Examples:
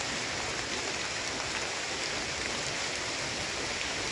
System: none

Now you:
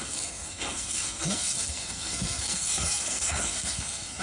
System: codec, SNAC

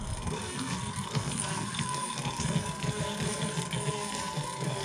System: codec, SNAC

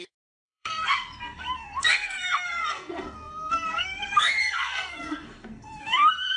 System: codec, SNAC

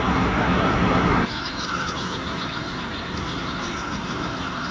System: codec, SNAC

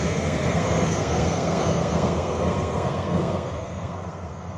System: codec, SNAC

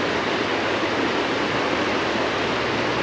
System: none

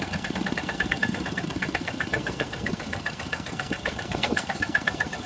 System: codec, SNAC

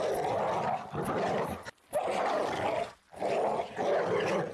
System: none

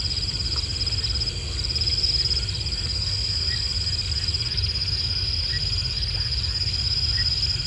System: none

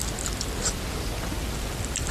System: none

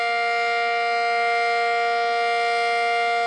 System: none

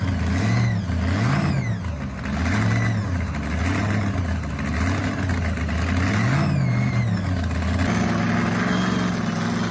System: none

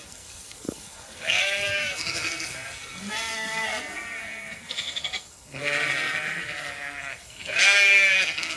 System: codec, SNAC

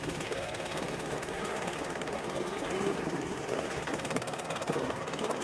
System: codec, SNAC